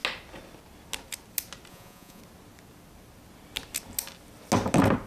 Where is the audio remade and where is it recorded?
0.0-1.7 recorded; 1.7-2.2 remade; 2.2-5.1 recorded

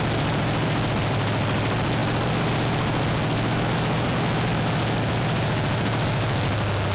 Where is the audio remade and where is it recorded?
0.0-6.9 recorded

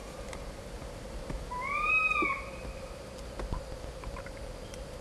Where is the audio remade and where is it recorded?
0.0-5.0 recorded

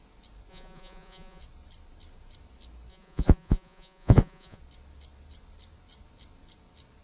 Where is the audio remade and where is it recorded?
0.0-0.5 recorded; 0.5-1.4 remade; 1.4-2.9 recorded; 2.9-4.6 remade; 4.6-7.0 recorded